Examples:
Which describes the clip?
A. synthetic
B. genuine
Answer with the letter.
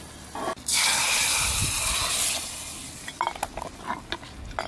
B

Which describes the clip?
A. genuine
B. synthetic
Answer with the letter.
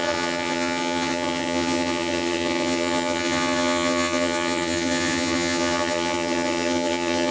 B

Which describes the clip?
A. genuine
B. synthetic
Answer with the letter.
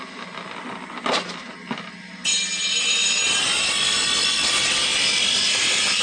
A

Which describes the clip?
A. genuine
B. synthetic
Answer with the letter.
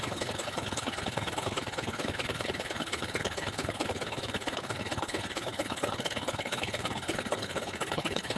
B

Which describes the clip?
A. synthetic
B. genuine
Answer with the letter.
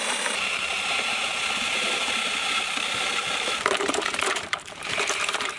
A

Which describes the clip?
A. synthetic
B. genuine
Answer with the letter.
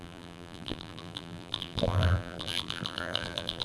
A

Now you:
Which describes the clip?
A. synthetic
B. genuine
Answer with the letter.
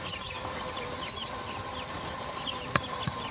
B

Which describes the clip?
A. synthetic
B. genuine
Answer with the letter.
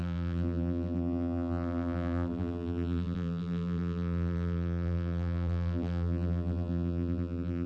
A